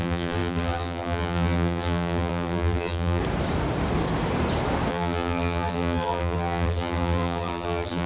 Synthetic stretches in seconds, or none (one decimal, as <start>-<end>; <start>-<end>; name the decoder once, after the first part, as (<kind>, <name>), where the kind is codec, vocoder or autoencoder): 0.0-3.2 (vocoder, BigVGAN v2); 4.9-8.1